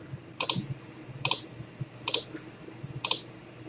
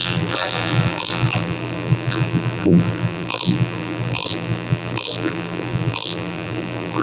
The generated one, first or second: second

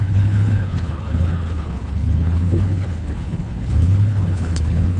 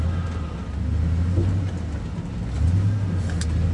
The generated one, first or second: first